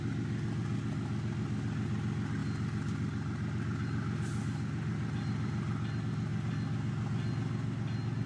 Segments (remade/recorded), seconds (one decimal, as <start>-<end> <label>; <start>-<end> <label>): 0.0-8.3 recorded